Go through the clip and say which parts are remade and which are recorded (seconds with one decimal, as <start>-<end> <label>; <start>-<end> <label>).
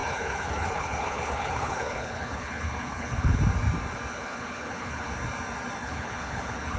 0.0-3.4 remade; 3.4-4.1 recorded; 4.1-5.1 remade; 5.1-5.8 recorded; 5.8-6.8 remade